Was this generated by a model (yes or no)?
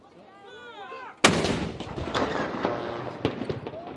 no